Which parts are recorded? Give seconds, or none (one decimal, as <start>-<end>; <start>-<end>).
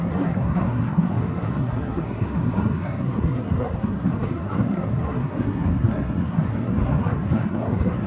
none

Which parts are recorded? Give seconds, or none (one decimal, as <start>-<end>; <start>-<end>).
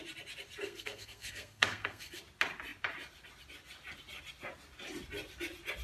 0.0-0.6; 2.2-5.8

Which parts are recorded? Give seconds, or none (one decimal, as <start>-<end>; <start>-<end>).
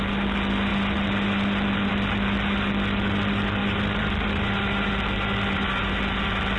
0.0-6.6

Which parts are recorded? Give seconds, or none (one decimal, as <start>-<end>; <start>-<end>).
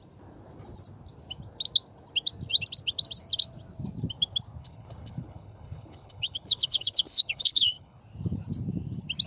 0.0-4.6; 8.0-9.3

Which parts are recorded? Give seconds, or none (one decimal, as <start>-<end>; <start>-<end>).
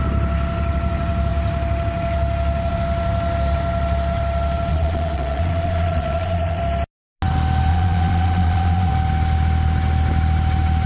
0.0-4.7; 6.6-7.7; 8.9-10.9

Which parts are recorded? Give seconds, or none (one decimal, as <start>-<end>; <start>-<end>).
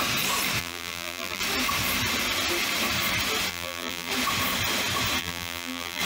0.0-0.6; 1.4-3.5; 4.1-5.2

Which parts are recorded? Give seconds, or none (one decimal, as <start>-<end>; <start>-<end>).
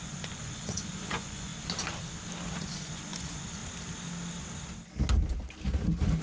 1.5-2.6; 3.6-6.2